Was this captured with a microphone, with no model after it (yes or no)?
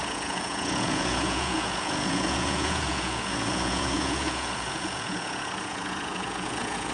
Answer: no